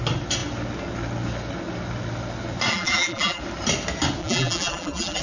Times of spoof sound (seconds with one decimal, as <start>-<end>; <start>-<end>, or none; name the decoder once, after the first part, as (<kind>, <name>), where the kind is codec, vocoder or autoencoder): 2.7-3.4 (vocoder, BigVGAN v2); 4.2-5.2